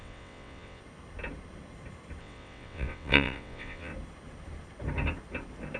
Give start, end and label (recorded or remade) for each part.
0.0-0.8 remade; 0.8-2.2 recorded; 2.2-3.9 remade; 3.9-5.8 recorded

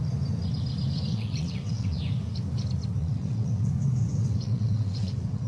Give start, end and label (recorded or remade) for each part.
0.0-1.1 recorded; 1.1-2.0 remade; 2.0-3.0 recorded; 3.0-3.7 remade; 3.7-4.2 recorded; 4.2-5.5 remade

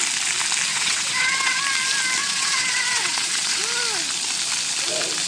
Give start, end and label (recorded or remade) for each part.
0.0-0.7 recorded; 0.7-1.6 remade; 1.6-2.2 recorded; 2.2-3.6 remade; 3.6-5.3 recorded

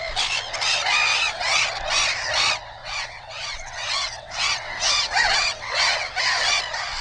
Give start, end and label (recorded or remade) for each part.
0.0-1.1 recorded; 1.1-1.6 remade; 1.6-2.8 recorded; 2.8-6.6 remade; 6.6-7.0 recorded